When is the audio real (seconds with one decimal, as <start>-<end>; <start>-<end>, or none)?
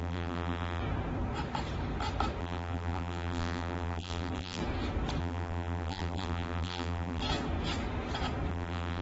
0.8-2.4; 4.6-5.2; 7.2-8.5